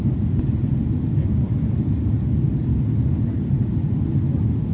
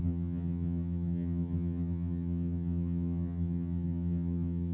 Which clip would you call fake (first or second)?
second